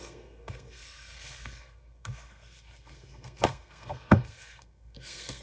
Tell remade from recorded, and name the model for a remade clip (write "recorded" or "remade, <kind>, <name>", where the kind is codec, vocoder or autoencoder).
remade, codec, SNAC